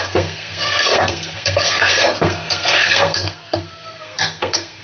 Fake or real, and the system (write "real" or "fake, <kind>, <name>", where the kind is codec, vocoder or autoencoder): fake, codec, SNAC